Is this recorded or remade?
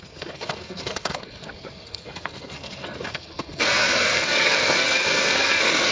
remade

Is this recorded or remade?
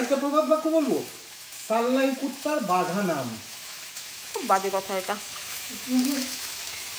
remade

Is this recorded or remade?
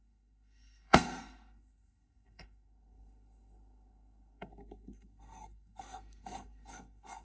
remade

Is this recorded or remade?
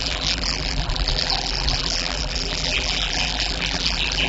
remade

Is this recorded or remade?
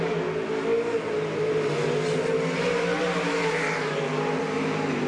recorded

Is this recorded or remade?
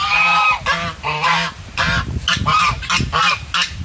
remade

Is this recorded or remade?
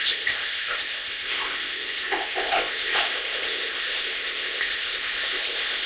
remade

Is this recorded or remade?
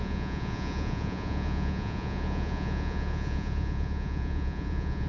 remade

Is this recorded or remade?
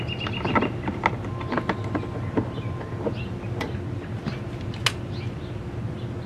recorded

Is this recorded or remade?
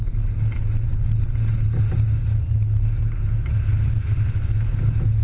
recorded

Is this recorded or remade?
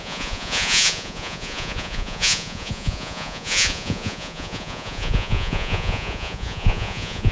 remade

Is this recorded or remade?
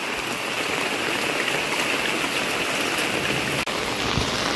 recorded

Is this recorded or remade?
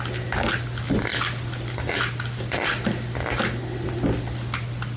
recorded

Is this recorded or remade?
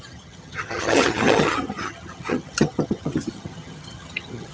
remade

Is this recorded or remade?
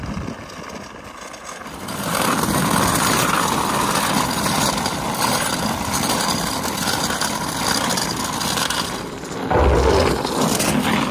recorded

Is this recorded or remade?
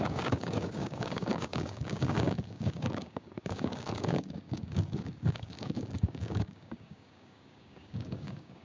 remade